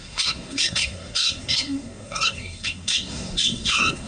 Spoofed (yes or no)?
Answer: yes